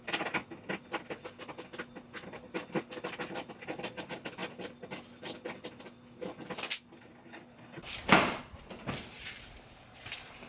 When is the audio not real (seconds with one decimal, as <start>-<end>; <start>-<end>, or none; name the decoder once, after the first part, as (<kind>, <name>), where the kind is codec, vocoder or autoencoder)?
none